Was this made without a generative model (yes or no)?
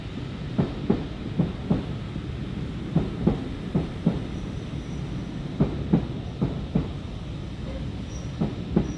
yes